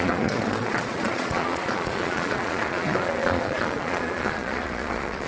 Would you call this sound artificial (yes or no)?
yes